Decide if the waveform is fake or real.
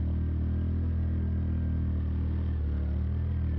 real